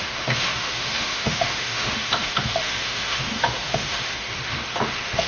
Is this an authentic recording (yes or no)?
no